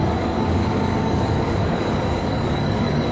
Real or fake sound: fake